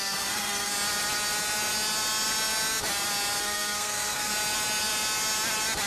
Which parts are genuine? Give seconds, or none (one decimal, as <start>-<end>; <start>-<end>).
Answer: 0.7-3.4; 4.3-5.9